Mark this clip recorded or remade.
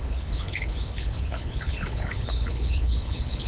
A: remade